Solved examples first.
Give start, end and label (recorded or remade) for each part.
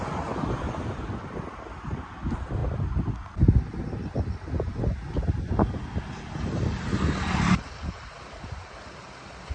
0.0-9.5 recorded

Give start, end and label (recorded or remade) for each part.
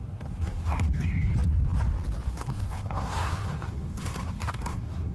0.0-1.3 remade; 1.3-2.3 recorded; 2.3-5.1 remade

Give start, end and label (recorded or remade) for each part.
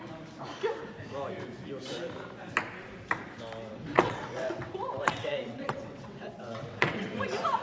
0.0-3.7 recorded; 3.7-7.6 remade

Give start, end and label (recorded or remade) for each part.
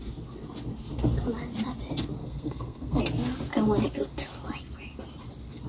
0.0-2.2 recorded; 2.2-3.0 remade; 3.0-5.7 recorded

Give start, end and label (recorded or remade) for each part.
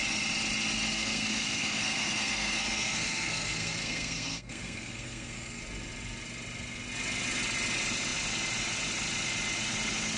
0.0-0.9 recorded; 0.9-5.6 remade; 5.6-10.2 recorded